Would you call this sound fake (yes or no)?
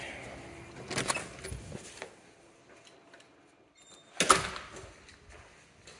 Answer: no